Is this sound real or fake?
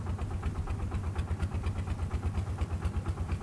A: real